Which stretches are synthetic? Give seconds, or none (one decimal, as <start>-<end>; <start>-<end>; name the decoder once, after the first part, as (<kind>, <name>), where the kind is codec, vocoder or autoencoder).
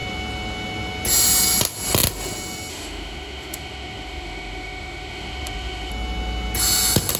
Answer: 2.7-5.9 (autoencoder, DAC-VAE)